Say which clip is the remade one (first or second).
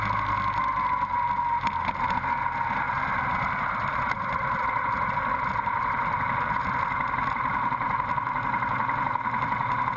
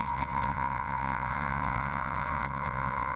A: second